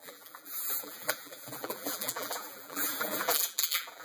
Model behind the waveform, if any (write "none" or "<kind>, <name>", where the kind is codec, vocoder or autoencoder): vocoder, BigVGAN v2